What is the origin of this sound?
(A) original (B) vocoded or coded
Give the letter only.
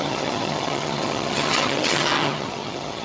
B